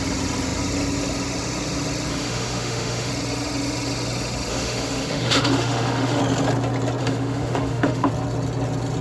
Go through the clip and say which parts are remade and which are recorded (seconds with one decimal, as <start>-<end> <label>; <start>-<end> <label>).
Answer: 0.0-2.1 recorded; 2.1-3.1 remade; 3.1-4.5 recorded; 4.5-6.2 remade; 6.2-7.0 recorded; 7.0-8.1 remade; 8.1-9.0 recorded